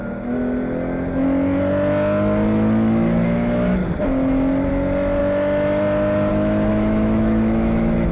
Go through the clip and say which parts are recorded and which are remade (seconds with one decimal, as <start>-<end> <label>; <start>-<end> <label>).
0.0-6.7 recorded; 6.7-8.1 remade